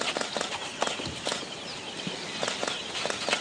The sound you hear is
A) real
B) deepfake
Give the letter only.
A